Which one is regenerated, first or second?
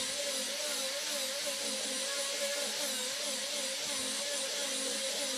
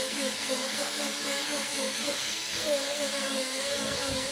second